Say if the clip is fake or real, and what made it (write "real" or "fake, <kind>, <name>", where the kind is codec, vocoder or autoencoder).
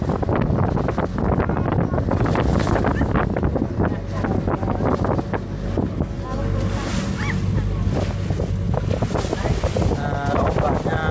real